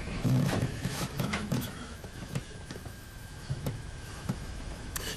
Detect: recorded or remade remade